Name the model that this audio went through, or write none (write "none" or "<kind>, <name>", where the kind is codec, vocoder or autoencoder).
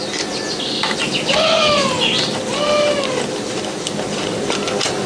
none